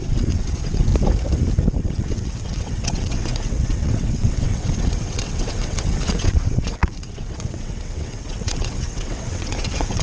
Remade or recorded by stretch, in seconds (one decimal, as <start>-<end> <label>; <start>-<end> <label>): 0.0-0.9 remade; 0.9-1.8 recorded; 1.8-10.0 remade